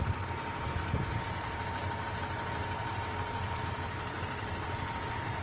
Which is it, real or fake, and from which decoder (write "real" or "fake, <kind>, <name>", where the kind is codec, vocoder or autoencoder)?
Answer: fake, vocoder, BigVGAN v2